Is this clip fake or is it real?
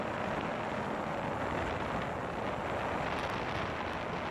real